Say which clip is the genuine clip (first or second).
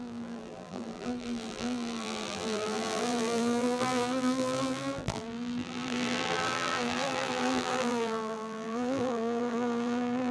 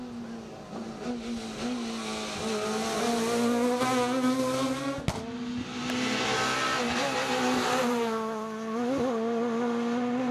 second